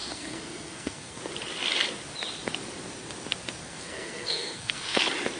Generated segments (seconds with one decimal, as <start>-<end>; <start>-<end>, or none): 0.0-1.2; 3.6-5.0